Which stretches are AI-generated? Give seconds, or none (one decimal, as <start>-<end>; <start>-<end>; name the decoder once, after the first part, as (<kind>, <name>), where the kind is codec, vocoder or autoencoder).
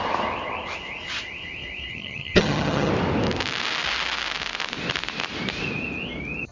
1.9-2.9 (vocoder, HiFi-GAN)